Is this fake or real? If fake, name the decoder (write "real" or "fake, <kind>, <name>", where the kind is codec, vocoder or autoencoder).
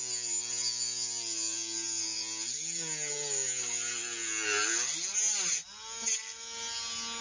real